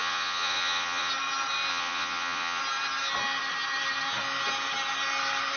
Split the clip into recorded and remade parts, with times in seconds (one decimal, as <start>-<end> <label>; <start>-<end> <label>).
0.0-1.1 remade; 1.1-1.7 recorded; 1.7-2.6 remade; 2.6-5.6 recorded